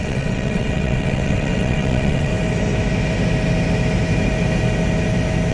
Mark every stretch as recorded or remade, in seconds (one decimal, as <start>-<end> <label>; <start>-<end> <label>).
0.0-2.3 remade; 2.3-5.5 recorded